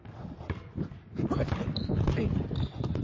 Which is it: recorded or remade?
recorded